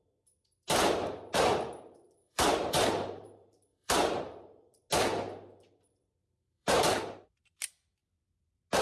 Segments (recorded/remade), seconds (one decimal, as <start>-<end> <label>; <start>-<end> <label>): 0.0-1.5 recorded; 1.5-4.2 remade; 4.2-6.2 recorded; 6.2-6.8 remade; 6.8-8.8 recorded